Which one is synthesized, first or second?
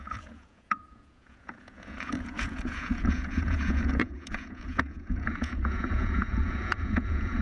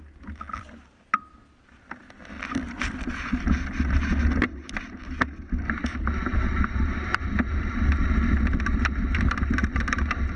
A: first